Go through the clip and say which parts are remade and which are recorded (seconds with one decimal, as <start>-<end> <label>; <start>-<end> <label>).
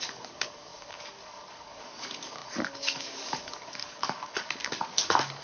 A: 0.0-5.4 remade